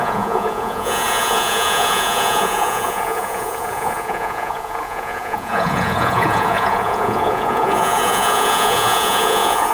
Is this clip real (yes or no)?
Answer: no